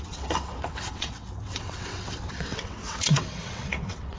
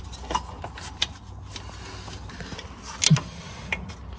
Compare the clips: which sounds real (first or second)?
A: second